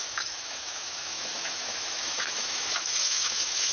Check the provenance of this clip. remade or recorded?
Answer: remade